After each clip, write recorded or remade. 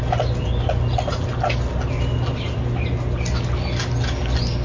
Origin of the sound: recorded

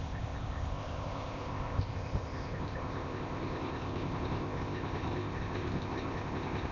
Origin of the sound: remade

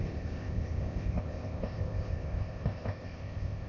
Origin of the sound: remade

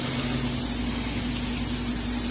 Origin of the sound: recorded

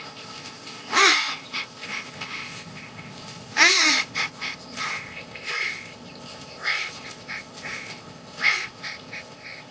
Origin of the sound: remade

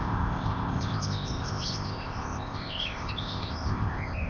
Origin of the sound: remade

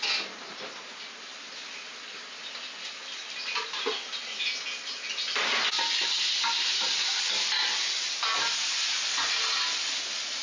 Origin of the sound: recorded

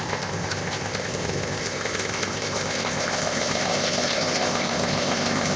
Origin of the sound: remade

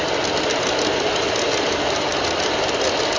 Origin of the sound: recorded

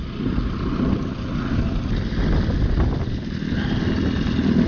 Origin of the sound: recorded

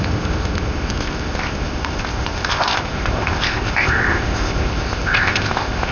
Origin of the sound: remade